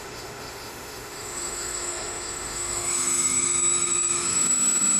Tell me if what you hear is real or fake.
fake